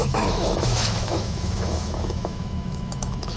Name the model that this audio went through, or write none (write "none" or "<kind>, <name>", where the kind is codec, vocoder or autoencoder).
autoencoder, DAC-VAE